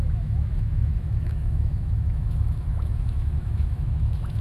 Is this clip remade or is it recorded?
remade